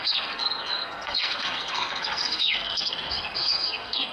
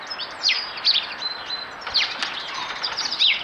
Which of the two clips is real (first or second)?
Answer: second